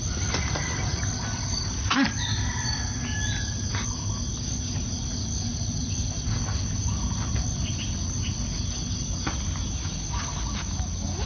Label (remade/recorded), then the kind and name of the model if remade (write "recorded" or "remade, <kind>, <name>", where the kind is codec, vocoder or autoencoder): recorded